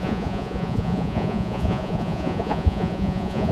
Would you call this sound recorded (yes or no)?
no